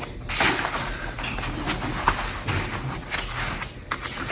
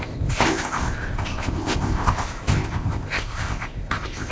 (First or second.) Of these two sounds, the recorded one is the first